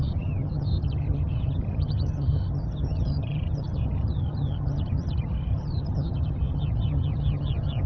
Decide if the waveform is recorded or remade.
remade